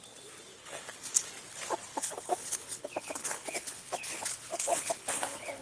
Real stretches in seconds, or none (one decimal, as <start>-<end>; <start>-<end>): 0.0-0.6; 1.3-1.9